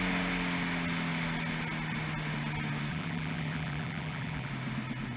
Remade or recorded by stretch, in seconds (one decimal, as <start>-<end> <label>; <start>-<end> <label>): 0.0-2.9 recorded; 2.9-4.5 remade; 4.5-5.2 recorded